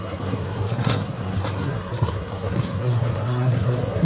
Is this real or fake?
fake